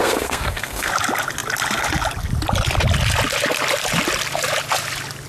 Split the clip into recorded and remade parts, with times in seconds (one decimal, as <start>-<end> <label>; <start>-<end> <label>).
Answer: 0.0-0.9 remade; 0.9-5.3 recorded